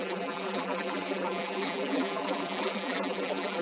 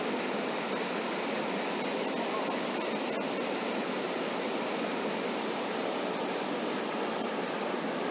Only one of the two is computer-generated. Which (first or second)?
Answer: first